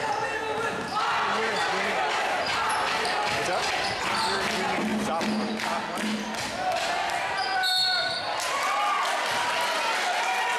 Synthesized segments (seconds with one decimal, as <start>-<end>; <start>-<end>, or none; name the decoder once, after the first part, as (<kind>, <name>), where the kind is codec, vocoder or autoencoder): none